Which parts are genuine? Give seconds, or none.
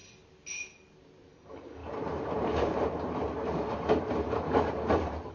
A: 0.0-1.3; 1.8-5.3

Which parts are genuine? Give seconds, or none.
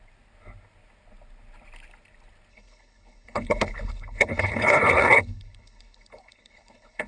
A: 0.0-2.5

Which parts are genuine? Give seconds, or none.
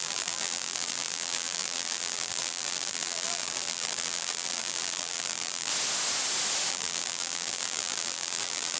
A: 5.7-6.7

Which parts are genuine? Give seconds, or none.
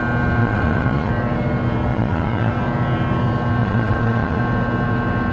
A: 0.0-0.4; 1.1-1.9; 2.5-3.6; 4.4-5.3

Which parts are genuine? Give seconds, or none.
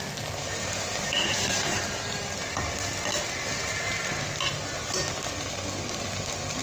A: 0.0-0.6; 2.3-6.6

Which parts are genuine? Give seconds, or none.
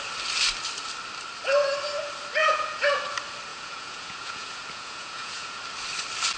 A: 0.0-2.4; 3.0-3.5; 5.6-6.4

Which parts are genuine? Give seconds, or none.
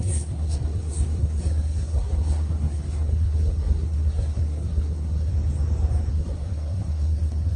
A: 5.3-6.1